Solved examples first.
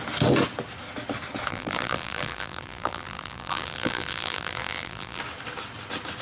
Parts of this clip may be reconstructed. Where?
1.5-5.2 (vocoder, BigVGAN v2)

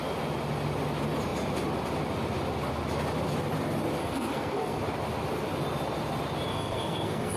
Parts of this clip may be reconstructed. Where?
4.0-4.8 (codec, SNAC); 6.5-7.4